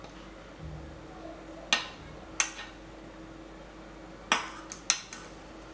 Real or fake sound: real